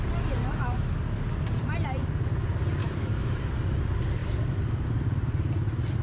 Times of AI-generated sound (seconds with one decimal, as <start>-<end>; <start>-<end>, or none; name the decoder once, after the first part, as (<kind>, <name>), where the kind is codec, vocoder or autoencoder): 0.4-1.0 (autoencoder, DAC-VAE); 2.8-3.5